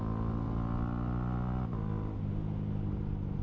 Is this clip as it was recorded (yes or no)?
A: yes